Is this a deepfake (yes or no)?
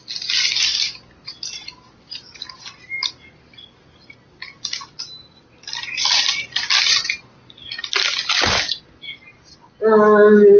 no